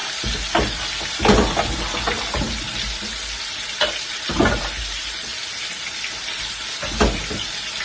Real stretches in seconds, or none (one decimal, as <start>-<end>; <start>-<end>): 0.0-7.8